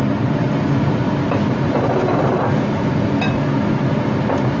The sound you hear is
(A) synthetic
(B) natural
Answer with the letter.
B